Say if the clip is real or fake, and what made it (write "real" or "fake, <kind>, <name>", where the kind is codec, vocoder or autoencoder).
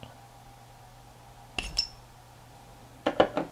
real